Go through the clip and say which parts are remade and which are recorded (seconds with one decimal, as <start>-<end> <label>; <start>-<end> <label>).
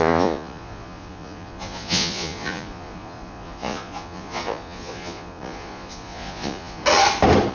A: 0.0-6.8 remade; 6.8-7.5 recorded